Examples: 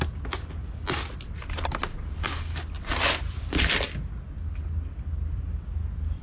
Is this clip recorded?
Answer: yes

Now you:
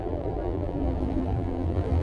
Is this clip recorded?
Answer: no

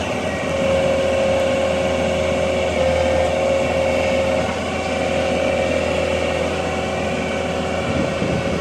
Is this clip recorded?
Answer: yes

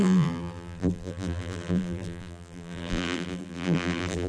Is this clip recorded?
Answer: no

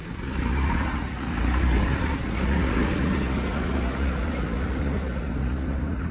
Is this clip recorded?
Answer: no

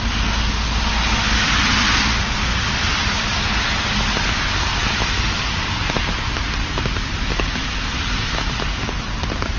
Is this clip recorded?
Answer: yes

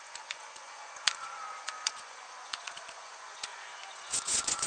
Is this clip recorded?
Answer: no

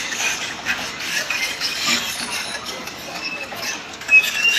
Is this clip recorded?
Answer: no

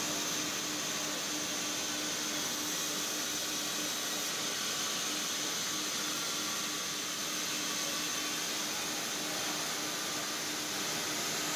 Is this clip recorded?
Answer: yes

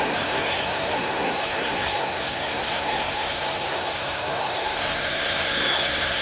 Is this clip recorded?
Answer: no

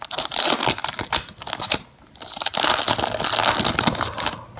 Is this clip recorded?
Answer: yes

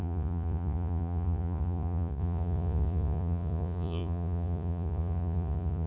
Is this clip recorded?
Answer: no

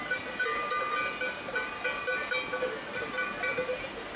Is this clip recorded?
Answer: yes